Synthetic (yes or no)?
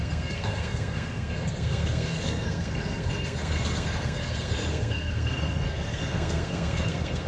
yes